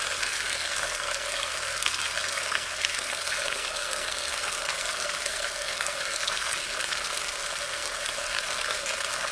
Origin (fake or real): fake